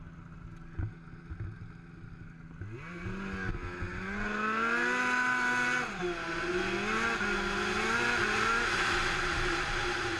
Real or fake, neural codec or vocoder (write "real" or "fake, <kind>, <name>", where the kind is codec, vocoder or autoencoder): real